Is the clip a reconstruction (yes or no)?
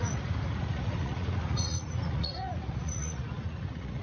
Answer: yes